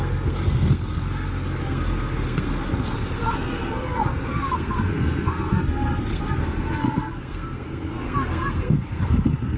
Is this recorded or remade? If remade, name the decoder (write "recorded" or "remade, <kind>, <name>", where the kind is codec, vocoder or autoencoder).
remade, codec, SNAC